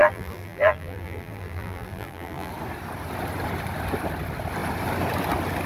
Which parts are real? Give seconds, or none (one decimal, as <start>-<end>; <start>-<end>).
2.5-5.7